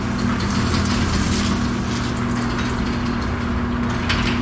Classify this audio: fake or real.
real